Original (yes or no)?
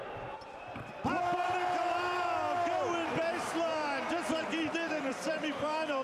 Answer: no